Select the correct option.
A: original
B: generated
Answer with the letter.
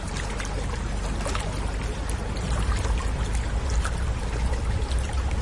A